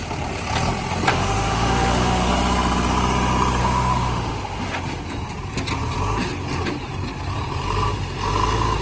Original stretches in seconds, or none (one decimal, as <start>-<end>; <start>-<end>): 0.0-1.1; 2.3-3.6; 4.8-8.8